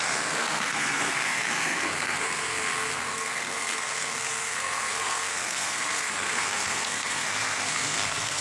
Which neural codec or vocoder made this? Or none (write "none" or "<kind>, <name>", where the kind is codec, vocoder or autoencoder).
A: codec, SNAC